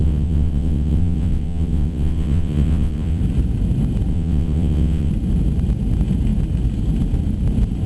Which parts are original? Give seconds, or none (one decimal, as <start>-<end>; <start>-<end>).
3.2-4.1; 5.1-7.9